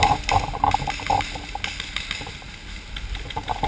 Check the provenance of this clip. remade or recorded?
recorded